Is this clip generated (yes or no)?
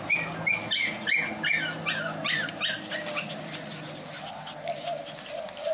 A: no